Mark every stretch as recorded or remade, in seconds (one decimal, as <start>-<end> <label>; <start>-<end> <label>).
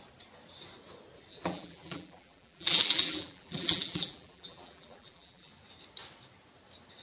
0.0-1.3 recorded; 1.3-5.5 remade; 5.5-7.0 recorded